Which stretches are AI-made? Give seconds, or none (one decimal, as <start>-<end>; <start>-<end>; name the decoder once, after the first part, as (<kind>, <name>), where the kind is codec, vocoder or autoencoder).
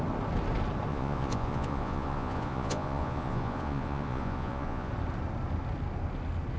0.9-4.9 (vocoder, Vocos)